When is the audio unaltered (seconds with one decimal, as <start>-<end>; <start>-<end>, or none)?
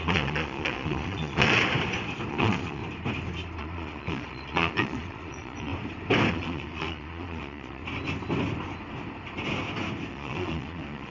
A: 1.6-2.3; 2.8-3.6; 5.7-6.3; 7.8-10.1